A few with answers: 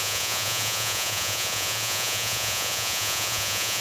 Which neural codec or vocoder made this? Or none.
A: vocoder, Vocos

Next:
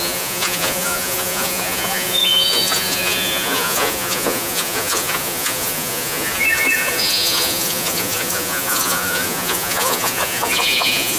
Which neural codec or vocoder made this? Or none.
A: vocoder, Vocos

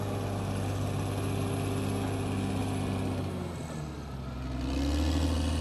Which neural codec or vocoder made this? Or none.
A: none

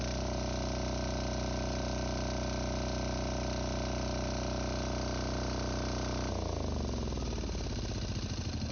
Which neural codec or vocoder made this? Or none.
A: none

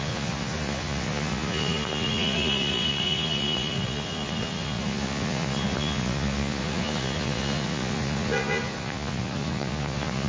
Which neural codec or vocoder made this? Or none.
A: vocoder, Vocos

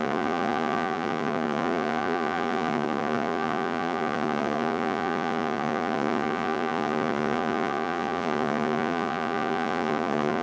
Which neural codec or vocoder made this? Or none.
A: vocoder, Vocos